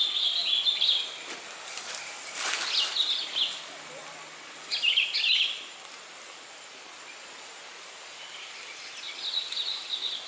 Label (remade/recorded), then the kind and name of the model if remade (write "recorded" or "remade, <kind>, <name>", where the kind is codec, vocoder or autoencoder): recorded